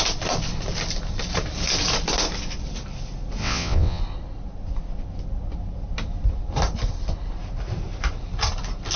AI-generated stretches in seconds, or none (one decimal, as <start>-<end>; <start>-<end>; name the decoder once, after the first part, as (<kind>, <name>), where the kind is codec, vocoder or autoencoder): 3.4-4.0 (vocoder, WaveNeXt)